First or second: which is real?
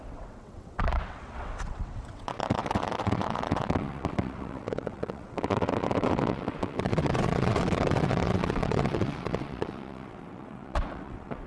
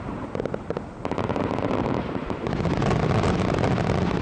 second